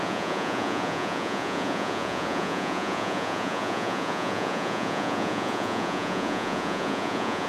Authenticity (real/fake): fake